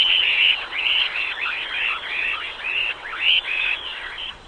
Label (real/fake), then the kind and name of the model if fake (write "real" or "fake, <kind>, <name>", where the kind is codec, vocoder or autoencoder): fake, vocoder, WaveNeXt